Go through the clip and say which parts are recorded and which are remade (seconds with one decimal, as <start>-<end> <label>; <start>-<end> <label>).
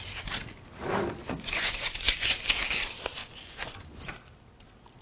0.0-1.2 recorded; 1.2-2.8 remade; 2.8-3.2 recorded; 3.2-4.1 remade; 4.1-5.0 recorded